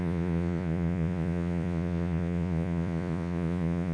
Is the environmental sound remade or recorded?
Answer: remade